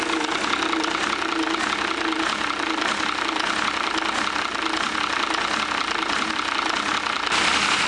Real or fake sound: real